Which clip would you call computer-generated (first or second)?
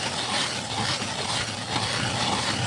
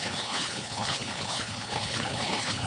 second